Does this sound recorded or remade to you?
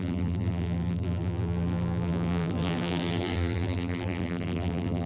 remade